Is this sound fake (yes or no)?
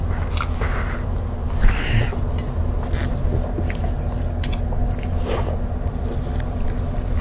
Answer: no